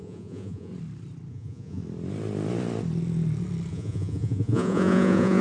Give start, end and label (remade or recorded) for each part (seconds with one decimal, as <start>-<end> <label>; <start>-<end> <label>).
0.0-0.7 remade; 0.7-1.3 recorded; 1.3-1.8 remade; 1.8-3.7 recorded; 3.7-5.4 remade